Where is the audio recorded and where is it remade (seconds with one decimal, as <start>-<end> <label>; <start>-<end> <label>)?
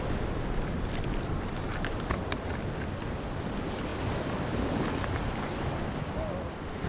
0.0-6.9 recorded